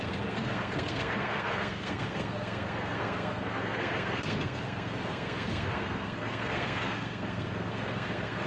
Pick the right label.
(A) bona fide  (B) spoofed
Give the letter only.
B